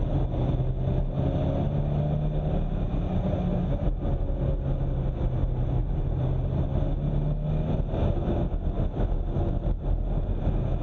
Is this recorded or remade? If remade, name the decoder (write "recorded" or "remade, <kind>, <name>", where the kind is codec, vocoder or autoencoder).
recorded